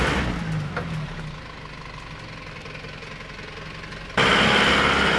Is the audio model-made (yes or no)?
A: no